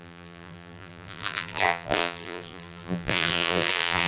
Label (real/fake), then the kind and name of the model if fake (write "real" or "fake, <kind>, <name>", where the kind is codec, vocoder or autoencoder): fake, vocoder, BigVGAN v2